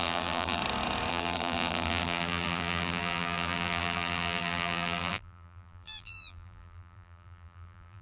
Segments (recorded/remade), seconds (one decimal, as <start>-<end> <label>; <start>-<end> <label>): 0.0-0.6 remade; 0.6-1.1 recorded; 1.1-8.0 remade